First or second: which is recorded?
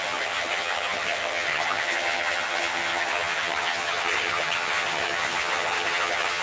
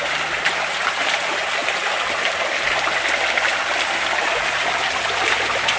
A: second